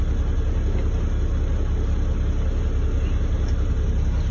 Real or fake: real